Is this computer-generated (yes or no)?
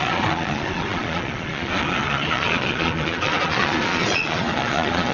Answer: yes